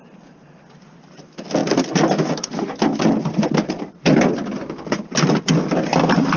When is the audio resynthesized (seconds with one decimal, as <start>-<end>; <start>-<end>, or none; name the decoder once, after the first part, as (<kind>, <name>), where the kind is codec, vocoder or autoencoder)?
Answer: none